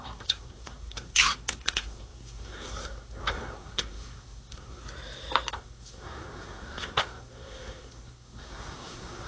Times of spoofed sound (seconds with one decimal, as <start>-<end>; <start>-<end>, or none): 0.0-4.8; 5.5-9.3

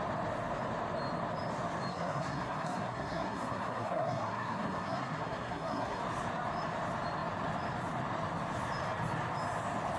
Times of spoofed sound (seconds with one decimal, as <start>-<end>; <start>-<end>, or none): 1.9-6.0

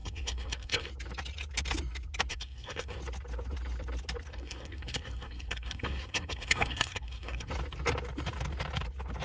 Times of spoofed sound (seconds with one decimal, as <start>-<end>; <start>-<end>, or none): 0.0-0.9; 2.3-3.0; 4.3-7.5

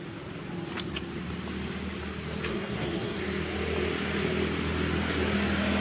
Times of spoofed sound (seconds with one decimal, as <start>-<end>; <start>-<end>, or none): 2.5-3.2

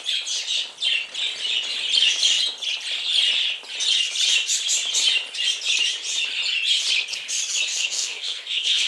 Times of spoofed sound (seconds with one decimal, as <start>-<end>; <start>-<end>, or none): 7.7-8.9